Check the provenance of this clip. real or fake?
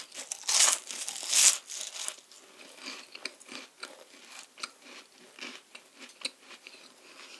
real